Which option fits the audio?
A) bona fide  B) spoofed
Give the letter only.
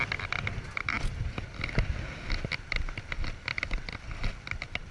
A